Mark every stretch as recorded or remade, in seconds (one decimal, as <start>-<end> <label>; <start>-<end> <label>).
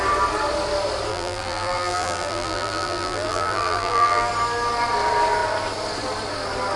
0.0-1.1 recorded; 1.1-4.3 remade; 4.3-6.8 recorded